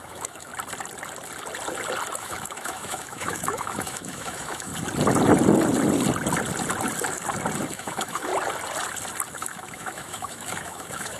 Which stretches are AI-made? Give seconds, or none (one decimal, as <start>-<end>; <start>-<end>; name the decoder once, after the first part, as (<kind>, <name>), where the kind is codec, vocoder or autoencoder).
0.0-0.5 (autoencoder, DAC-VAE); 2.2-4.7; 7.7-8.3; 9.3-11.2